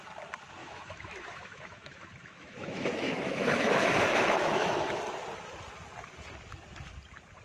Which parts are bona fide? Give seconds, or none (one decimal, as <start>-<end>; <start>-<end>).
0.0-0.6; 5.0-7.4